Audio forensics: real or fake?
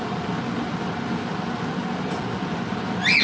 real